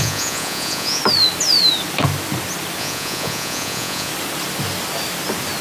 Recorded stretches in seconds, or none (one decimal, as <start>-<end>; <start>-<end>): 1.0-2.8; 4.1-5.6